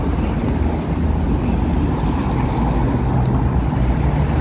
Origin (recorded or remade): recorded